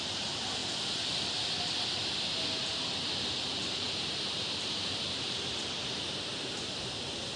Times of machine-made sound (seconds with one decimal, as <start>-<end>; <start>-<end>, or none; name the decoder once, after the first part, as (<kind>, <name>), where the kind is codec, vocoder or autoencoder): 0.0-0.6 (vocoder, BigVGAN v2); 3.0-7.4